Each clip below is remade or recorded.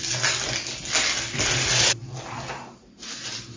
recorded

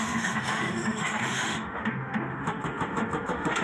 remade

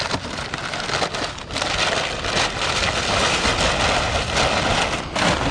recorded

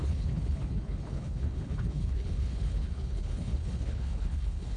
remade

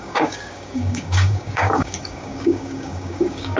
remade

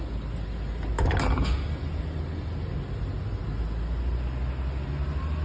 recorded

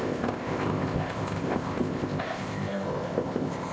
remade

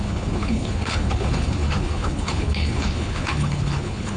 remade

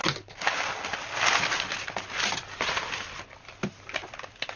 recorded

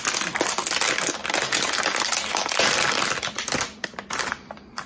recorded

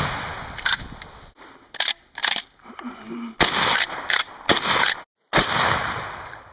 recorded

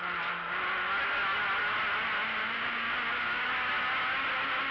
recorded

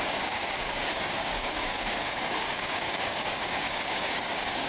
remade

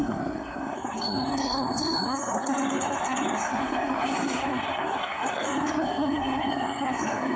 remade